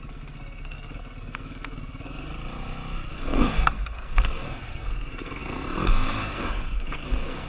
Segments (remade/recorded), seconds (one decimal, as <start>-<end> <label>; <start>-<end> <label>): 0.0-2.3 remade; 2.3-3.1 recorded; 3.1-7.5 remade